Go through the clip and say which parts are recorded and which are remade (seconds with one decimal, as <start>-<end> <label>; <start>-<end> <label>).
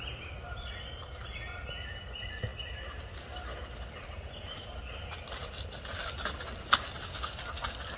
0.0-8.0 recorded